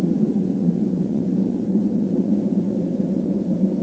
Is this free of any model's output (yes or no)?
no